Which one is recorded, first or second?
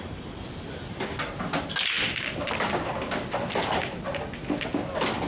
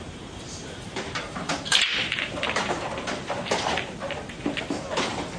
first